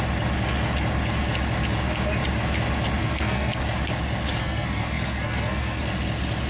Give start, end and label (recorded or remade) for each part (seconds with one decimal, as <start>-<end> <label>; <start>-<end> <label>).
0.0-3.0 recorded; 3.0-3.6 remade; 3.6-4.4 recorded; 4.4-5.8 remade; 5.8-6.5 recorded